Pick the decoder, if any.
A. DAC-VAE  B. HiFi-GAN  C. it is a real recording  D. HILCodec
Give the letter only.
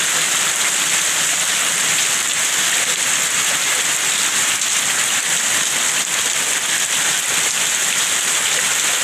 C